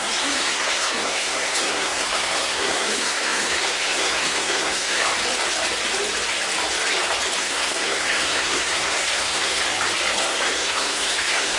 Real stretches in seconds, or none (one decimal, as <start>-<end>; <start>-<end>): 5.1-7.4; 9.6-10.2